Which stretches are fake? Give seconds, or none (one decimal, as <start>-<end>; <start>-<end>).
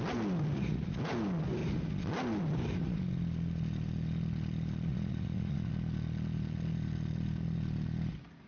0.5-1.1; 4.9-5.7